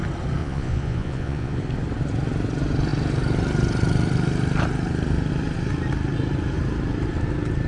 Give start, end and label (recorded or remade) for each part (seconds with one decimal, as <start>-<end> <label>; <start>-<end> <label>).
0.0-0.4 recorded; 0.4-1.6 remade; 1.6-7.7 recorded